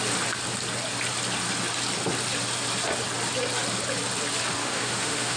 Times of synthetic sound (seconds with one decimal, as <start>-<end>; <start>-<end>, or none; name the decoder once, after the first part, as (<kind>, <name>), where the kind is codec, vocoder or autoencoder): 4.6-5.4 (autoencoder, DAC-VAE)